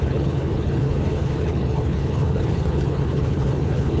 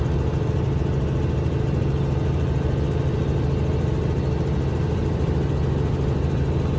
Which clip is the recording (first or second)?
second